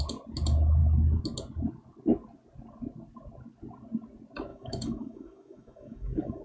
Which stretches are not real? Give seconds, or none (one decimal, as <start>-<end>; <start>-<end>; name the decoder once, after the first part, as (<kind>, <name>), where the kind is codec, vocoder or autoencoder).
4.5-6.4 (autoencoder, DAC-VAE)